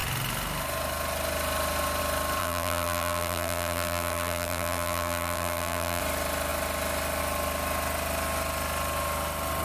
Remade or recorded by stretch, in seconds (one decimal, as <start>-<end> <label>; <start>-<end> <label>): 0.0-2.4 recorded; 2.4-6.0 remade; 6.0-9.6 recorded